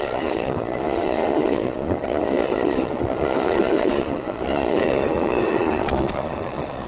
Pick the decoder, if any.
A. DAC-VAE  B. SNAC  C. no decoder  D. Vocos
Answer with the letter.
D